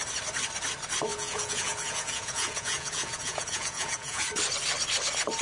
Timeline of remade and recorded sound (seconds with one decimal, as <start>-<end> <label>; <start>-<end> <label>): 0.0-1.1 recorded; 1.1-4.3 remade; 4.3-5.4 recorded